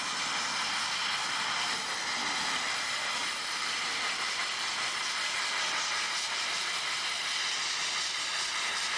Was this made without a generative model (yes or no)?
yes